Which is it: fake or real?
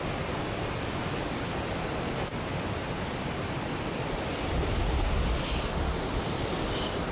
real